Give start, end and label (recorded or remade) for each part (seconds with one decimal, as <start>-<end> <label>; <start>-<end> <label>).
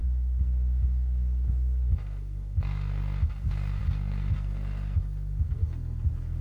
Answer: 0.0-6.4 remade